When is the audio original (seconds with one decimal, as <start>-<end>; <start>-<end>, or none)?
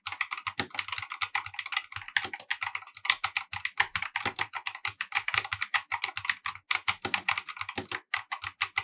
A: 0.0-3.9; 6.1-8.8